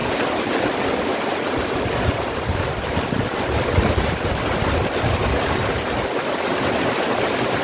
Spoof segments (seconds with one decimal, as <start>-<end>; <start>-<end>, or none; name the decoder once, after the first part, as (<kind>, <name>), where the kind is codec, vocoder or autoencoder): none